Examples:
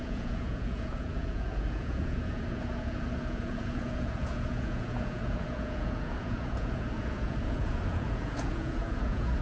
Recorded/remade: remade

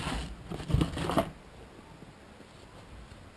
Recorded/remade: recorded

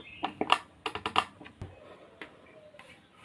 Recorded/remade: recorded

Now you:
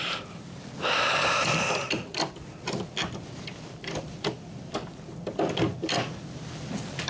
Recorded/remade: recorded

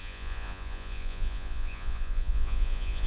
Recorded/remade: remade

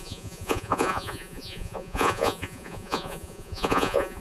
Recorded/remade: remade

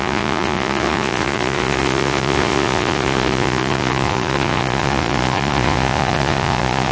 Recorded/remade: remade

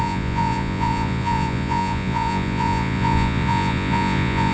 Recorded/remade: remade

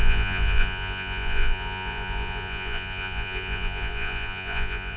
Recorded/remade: remade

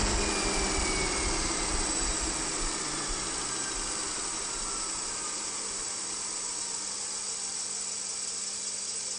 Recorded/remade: recorded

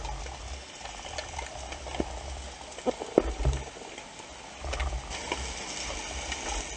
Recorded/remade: recorded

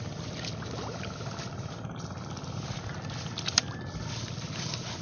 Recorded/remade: recorded